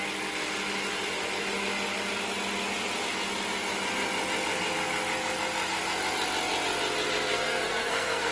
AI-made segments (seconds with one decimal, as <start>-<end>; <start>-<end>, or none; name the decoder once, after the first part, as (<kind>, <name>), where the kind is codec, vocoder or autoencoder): 7.3-8.3 (codec, SNAC)